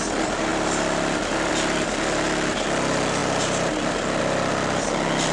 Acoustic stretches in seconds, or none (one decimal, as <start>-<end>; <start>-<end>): 0.0-5.3

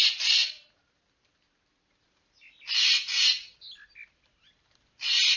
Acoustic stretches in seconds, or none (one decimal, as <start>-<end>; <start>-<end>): 0.0-5.4

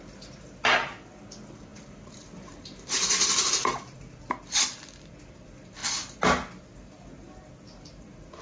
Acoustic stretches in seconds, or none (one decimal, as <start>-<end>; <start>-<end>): 0.0-1.7; 4.2-8.4

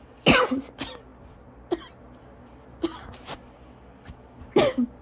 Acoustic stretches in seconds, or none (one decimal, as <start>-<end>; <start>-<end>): 0.0-5.0

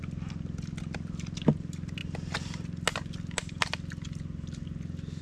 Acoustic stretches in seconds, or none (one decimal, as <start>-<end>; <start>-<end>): 0.0-5.2

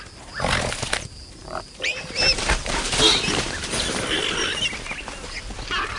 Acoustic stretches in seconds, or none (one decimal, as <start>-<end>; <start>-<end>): 0.0-1.4; 2.9-6.0